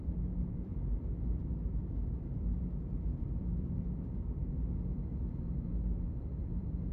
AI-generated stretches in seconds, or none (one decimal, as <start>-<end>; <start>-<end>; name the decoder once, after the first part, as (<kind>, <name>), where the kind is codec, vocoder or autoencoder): 0.0-6.9 (vocoder, BigVGAN v2)